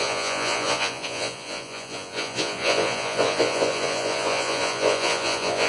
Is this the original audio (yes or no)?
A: no